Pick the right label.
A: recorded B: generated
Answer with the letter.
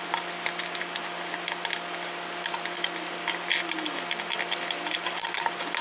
A